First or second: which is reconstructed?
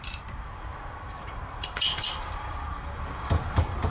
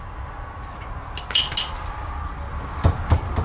first